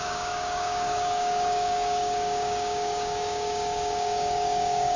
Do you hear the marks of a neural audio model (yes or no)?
yes